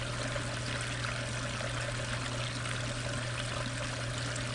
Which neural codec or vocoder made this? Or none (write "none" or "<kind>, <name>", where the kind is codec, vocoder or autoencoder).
none